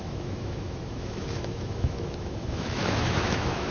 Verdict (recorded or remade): remade